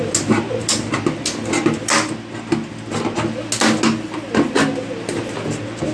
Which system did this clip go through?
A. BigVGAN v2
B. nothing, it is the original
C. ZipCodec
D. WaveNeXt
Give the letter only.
B